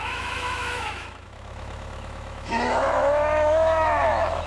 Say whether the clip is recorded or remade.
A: remade